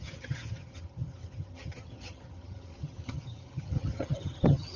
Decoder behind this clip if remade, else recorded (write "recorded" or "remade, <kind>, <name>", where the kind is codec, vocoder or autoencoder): remade, vocoder, HiFi-GAN